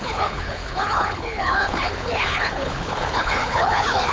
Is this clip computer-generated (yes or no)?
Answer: yes